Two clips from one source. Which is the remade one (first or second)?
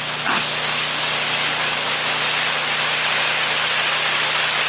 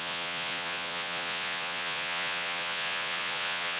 second